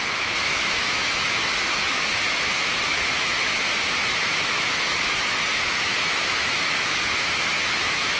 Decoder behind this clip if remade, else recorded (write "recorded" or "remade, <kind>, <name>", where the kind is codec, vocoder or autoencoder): remade, autoencoder, DAC-VAE